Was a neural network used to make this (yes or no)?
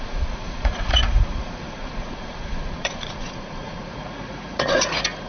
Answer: yes